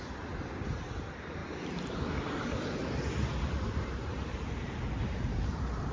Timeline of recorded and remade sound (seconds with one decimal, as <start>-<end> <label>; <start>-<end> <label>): 0.0-1.4 remade; 1.4-3.2 recorded; 3.2-5.9 remade